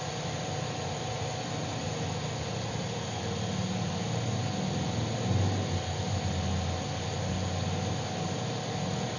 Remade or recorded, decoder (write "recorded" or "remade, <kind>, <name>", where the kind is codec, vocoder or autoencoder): recorded